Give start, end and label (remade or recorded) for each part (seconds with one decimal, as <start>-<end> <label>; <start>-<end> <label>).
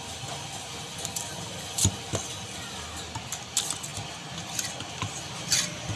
0.0-6.0 recorded